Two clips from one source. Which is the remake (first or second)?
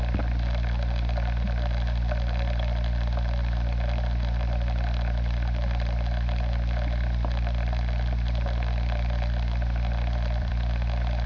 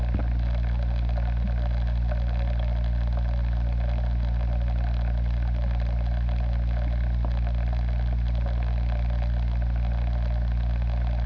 first